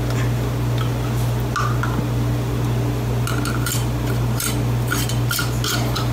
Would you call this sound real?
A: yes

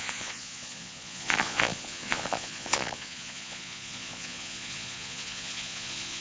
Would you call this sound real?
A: no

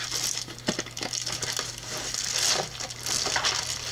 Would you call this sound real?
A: yes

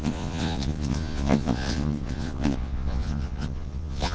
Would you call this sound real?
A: no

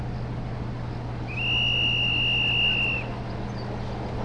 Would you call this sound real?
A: yes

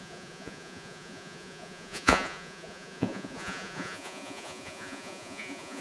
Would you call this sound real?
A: no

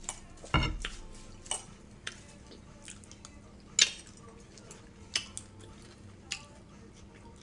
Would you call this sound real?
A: yes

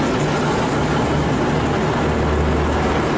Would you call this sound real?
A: yes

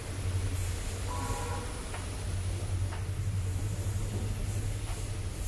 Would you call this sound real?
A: yes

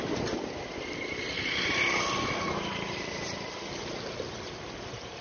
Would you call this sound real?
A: yes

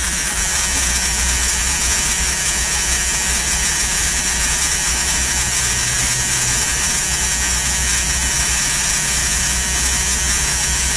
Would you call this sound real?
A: no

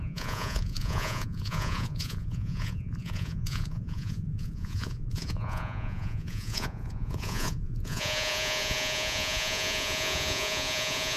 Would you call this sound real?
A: no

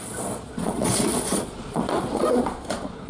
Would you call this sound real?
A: no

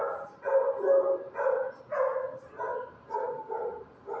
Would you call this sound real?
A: yes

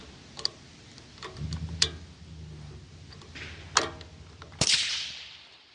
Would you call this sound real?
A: yes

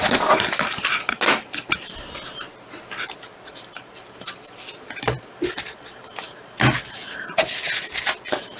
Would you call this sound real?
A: yes